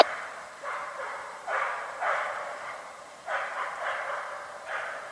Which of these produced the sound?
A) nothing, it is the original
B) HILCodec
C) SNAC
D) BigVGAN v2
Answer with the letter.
D